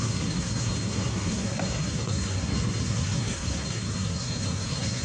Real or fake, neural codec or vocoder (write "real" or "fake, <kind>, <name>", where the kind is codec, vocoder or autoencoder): fake, codec, SNAC